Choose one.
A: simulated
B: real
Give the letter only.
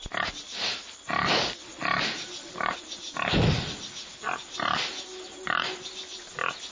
B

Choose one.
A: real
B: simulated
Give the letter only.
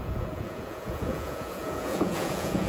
B